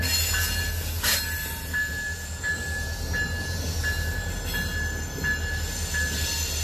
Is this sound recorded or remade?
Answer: recorded